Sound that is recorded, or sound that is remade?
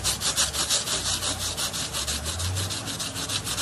recorded